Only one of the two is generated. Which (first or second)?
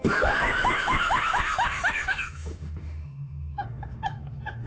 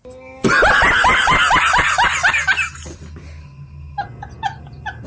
first